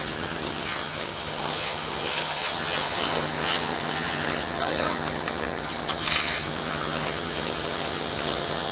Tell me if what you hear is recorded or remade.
remade